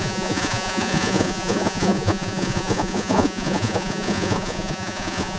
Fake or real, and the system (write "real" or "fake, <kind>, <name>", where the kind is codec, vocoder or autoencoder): fake, vocoder, Vocos